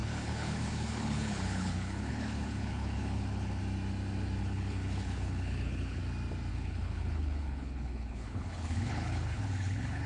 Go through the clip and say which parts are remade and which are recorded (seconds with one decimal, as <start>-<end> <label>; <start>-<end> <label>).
0.0-3.6 remade; 3.6-4.4 recorded; 4.4-6.0 remade; 6.0-6.5 recorded; 6.5-10.1 remade